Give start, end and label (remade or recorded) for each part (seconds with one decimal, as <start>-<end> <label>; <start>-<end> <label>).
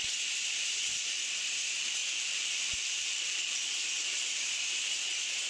0.0-2.0 recorded; 2.0-4.4 remade; 4.4-5.5 recorded